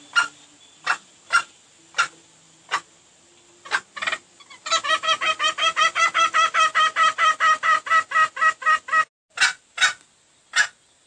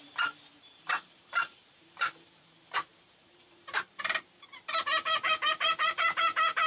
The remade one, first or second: second